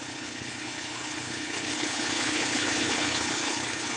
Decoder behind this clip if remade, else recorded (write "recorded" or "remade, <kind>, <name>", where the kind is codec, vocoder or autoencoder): remade, codec, HILCodec